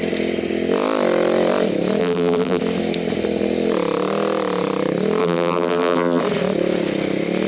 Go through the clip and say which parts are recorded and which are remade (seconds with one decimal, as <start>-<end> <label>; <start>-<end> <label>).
0.0-2.0 recorded; 2.0-2.6 remade; 2.6-5.2 recorded; 5.2-6.2 remade; 6.2-7.5 recorded